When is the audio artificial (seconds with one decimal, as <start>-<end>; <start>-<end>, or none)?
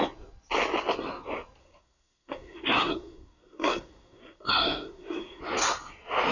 1.6-5.4